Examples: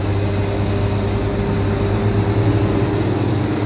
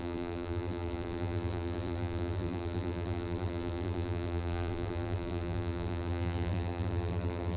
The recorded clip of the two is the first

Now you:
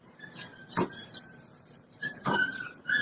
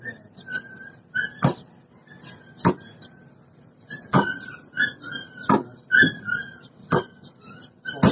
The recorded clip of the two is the second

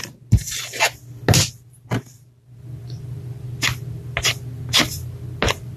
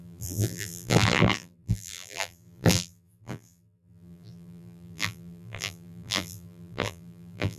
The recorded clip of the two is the first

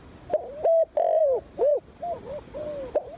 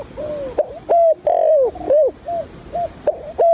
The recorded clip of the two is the second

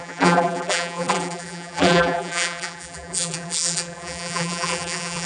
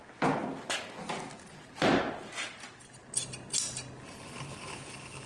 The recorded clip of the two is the second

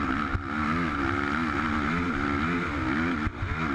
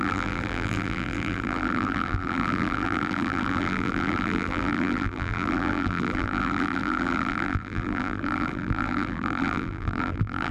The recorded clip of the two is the first